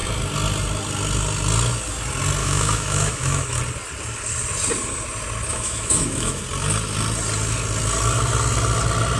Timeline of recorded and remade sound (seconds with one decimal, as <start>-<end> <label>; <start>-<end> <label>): 0.0-2.4 recorded; 2.4-3.6 remade; 3.6-5.5 recorded; 5.5-6.4 remade; 6.4-9.2 recorded